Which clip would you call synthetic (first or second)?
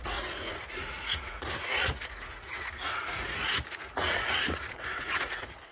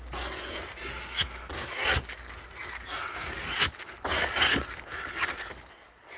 first